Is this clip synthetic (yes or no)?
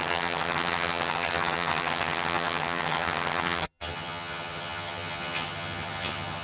yes